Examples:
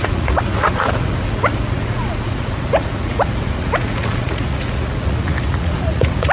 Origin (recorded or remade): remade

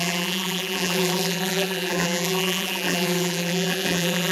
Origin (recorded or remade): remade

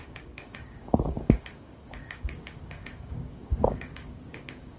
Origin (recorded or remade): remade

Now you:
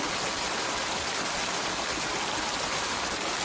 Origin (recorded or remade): recorded